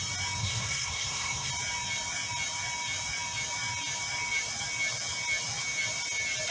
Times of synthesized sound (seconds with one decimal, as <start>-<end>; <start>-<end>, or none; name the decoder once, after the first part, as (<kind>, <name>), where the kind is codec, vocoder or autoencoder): 0.4-1.5 (codec, SNAC)